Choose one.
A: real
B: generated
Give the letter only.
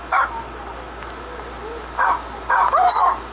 A